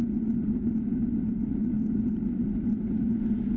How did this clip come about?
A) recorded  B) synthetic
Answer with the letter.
A